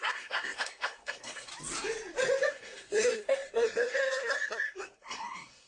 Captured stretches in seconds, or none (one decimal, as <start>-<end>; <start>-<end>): 1.5-2.5

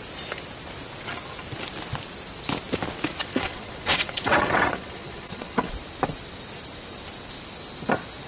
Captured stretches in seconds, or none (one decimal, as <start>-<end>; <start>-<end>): 0.0-3.2; 5.7-8.3

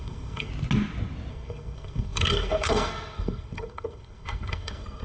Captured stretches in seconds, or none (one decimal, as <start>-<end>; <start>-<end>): 0.5-1.3

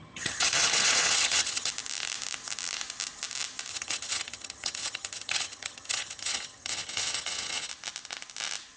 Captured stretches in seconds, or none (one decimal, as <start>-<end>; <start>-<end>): 1.7-3.7; 7.7-8.8

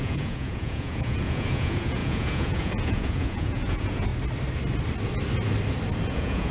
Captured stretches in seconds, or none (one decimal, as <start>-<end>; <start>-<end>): 4.1-6.1

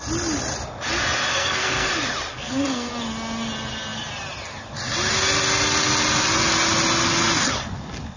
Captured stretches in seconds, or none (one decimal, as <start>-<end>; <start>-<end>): 0.0-1.3; 1.9-2.3; 2.9-8.2

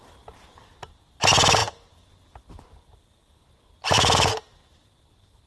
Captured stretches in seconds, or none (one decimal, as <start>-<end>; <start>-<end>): 0.0-5.5